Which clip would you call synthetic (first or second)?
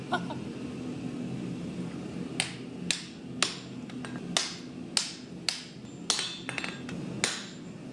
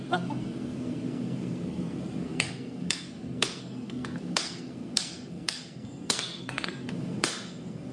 second